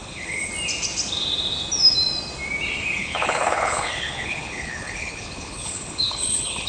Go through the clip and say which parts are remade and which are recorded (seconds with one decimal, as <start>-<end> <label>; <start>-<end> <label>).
0.0-0.5 remade; 0.5-3.0 recorded; 3.0-6.7 remade